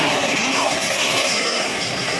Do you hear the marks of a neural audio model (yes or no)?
yes